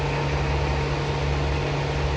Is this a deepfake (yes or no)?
no